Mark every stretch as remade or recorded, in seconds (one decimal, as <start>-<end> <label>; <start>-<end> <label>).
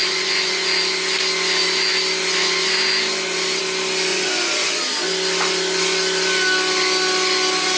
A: 0.0-0.6 remade; 0.6-4.1 recorded; 4.1-4.8 remade; 4.8-7.8 recorded